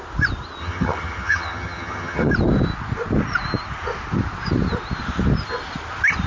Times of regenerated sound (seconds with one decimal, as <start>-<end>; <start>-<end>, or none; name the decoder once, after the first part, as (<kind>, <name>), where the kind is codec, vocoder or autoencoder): 0.6-2.3 (vocoder, HiFi-GAN)